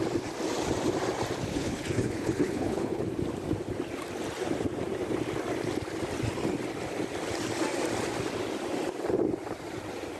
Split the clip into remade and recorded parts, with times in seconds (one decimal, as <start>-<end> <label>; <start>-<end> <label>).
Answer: 0.0-1.5 recorded; 1.5-3.0 remade; 3.0-10.2 recorded